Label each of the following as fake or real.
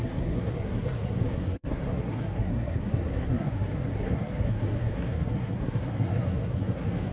fake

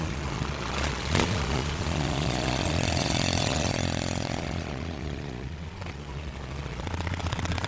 fake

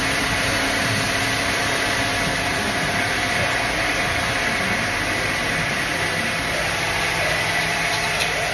real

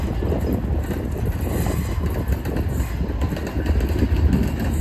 real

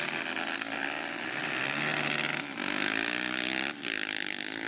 real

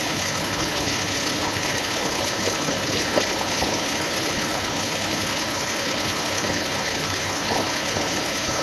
fake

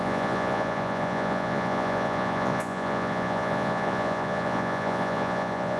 fake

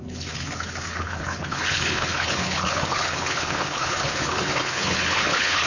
fake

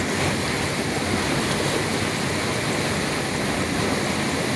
real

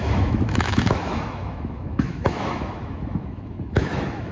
fake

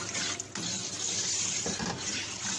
real